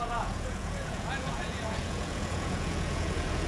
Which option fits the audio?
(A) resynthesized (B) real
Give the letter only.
A